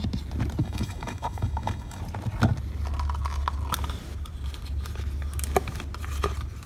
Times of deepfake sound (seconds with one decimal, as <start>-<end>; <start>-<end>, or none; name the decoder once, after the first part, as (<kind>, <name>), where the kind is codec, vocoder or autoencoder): 0.6-2.0 (autoencoder, DAC-VAE)